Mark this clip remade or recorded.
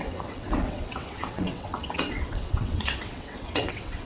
remade